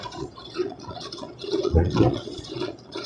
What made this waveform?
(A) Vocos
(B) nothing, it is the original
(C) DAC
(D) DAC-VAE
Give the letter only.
A